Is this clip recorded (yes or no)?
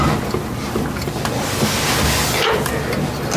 yes